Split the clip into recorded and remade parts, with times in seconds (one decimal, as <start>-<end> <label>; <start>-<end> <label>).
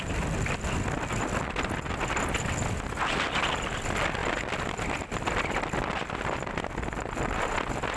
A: 0.0-8.0 recorded